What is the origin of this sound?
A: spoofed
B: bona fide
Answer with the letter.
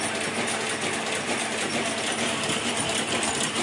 B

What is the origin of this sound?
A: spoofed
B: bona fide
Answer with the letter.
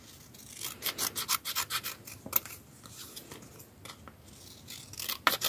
B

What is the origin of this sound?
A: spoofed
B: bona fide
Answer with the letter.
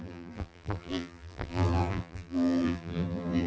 A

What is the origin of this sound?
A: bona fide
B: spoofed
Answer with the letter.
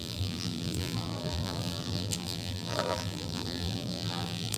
B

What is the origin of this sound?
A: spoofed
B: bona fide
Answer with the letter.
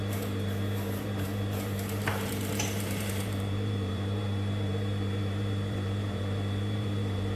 A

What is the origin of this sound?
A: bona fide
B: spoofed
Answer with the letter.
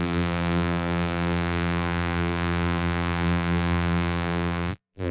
B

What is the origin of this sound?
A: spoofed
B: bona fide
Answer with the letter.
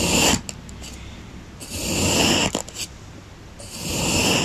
B